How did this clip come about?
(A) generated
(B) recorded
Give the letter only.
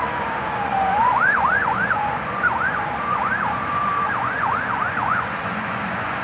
A